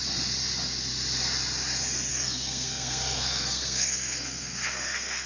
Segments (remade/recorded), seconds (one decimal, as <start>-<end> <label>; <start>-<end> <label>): 0.0-2.1 recorded; 2.1-5.3 remade

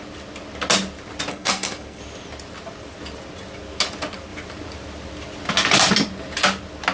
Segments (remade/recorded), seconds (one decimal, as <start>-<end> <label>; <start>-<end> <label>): 0.0-1.3 recorded; 1.3-2.0 remade; 2.0-6.9 recorded

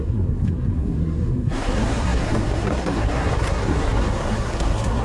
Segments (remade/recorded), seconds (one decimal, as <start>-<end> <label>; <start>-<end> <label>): 0.0-5.0 remade

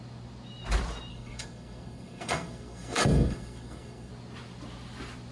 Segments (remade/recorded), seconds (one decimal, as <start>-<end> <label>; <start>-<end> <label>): 0.0-1.1 recorded; 1.1-4.1 remade; 4.1-5.3 recorded